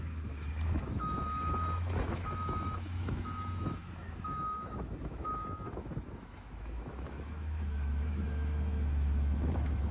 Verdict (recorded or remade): remade